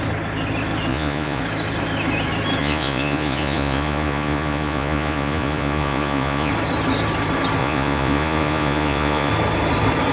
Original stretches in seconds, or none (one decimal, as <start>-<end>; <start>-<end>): 0.0-0.9; 1.4-2.6; 6.5-7.6; 9.3-10.1